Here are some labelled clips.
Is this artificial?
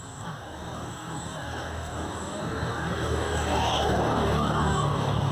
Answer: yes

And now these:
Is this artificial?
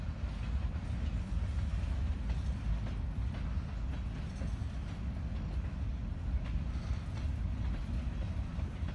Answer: no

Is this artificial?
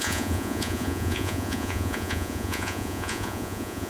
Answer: yes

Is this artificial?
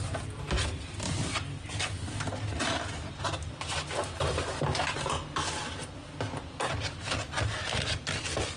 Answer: no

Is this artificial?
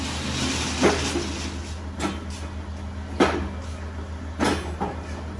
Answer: no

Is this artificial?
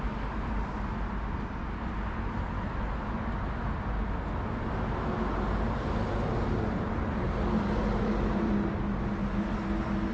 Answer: no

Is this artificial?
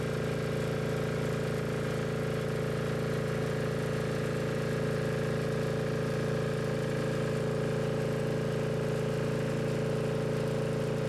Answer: no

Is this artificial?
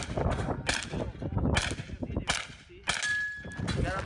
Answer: no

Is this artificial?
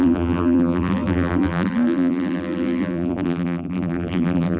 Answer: yes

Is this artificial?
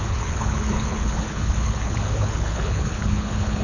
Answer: yes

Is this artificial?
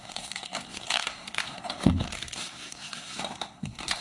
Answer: yes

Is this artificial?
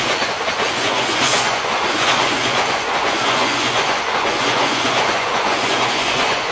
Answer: yes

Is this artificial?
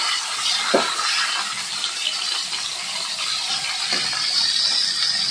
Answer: no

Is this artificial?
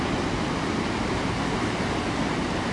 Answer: no